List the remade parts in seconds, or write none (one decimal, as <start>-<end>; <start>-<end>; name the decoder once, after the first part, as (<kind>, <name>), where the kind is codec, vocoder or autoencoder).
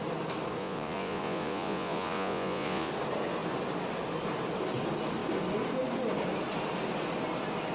0.6-2.9 (vocoder, Vocos)